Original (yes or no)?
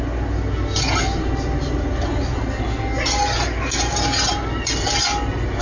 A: yes